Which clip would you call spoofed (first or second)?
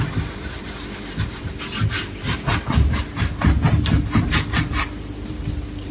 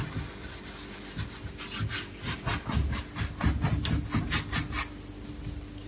first